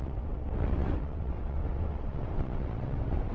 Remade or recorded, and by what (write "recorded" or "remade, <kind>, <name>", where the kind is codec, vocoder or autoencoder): remade, vocoder, WaveNeXt